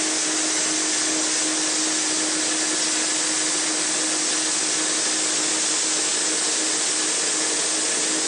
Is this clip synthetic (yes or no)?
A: no